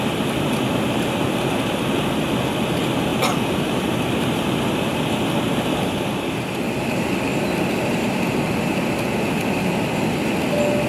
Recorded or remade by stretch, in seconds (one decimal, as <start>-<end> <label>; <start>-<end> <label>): 0.0-10.9 recorded